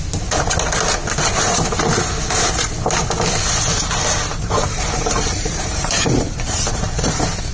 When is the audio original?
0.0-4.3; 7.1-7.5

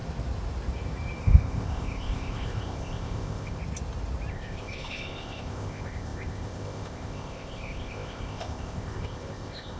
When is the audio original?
0.0-1.2; 3.6-4.3

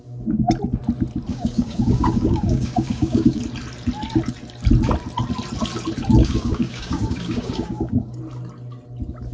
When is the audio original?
0.0-1.3; 3.4-6.2; 8.2-9.3

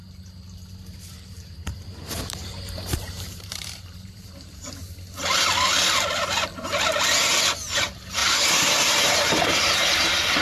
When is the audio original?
0.0-1.1; 4.7-8.2; 10.0-10.4

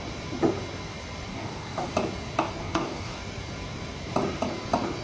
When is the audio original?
0.0-1.3; 1.9-2.6; 3.2-5.0

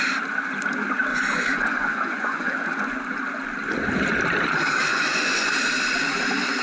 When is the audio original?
0.0-1.1; 3.0-4.9; 5.5-6.6

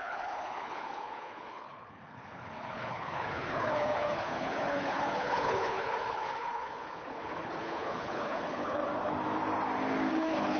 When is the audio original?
8.8-10.1

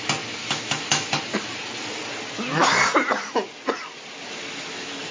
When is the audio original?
0.0-0.4; 1.2-5.1